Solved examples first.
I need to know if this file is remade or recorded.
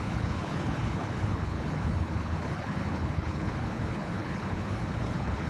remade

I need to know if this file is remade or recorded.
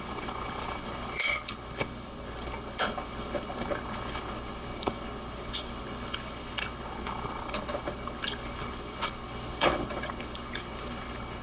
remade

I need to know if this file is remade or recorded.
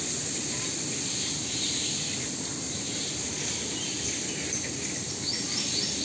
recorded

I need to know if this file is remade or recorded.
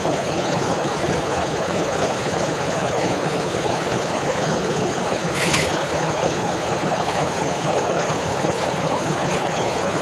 remade